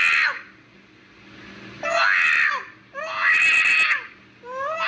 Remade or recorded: recorded